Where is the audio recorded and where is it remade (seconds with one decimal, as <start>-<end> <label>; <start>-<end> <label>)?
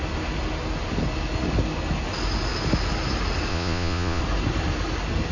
0.0-3.5 recorded; 3.5-4.2 remade; 4.2-5.3 recorded